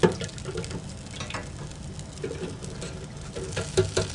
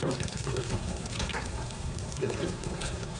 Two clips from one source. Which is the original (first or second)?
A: first